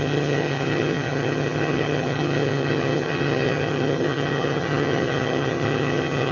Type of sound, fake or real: fake